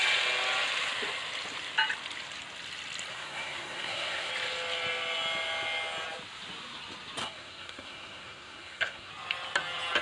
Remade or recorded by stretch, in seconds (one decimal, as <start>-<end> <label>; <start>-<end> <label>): 0.0-3.1 recorded; 3.1-4.3 remade; 4.3-7.2 recorded; 7.2-9.1 remade; 9.1-10.0 recorded